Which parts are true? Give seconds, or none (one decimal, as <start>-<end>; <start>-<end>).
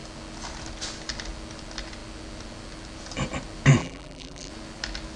0.0-3.8; 4.5-5.2